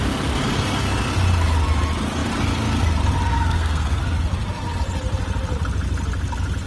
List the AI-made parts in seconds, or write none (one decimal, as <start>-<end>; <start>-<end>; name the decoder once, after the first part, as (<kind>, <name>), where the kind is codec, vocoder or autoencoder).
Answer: 3.3-4.0 (codec, SNAC)